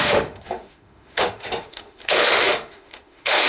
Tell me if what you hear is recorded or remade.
remade